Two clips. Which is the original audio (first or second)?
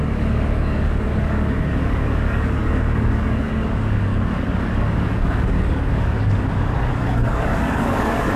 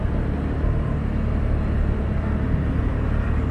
second